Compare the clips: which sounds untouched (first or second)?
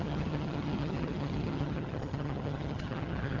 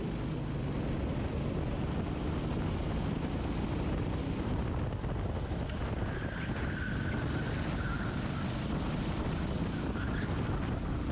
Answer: second